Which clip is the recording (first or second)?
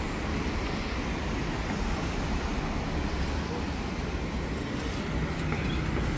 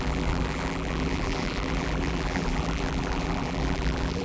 first